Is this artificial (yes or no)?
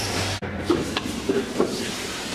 yes